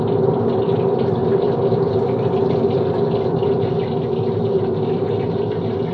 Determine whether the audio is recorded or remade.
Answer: recorded